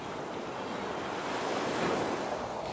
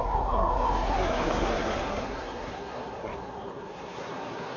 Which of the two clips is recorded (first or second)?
first